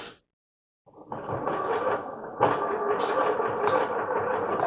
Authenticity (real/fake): real